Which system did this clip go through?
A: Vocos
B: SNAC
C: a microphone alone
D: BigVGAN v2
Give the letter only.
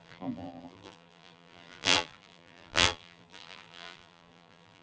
D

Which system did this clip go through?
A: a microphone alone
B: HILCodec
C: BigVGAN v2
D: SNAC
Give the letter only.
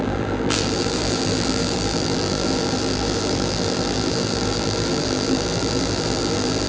C